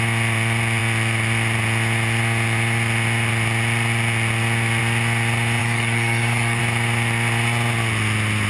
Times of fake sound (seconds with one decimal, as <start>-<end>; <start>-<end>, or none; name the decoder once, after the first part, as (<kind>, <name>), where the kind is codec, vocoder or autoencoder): 5.6-6.6 (codec, DAC)